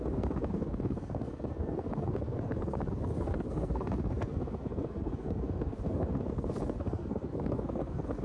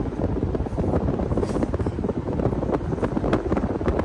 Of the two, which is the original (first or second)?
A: second